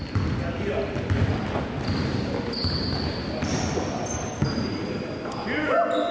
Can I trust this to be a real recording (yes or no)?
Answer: yes